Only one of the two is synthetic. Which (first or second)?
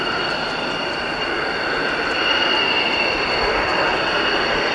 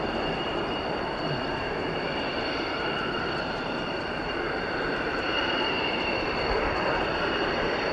second